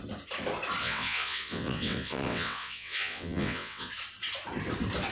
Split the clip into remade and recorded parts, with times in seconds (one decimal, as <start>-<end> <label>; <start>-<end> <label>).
0.0-0.8 recorded; 0.8-3.9 remade; 3.9-5.1 recorded